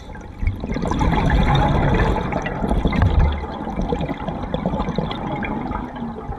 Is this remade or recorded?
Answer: recorded